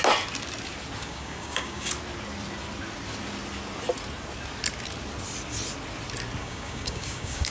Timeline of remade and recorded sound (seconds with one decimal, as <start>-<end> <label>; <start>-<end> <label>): 0.0-1.0 recorded; 1.0-1.9 remade; 1.9-6.4 recorded; 6.4-7.5 remade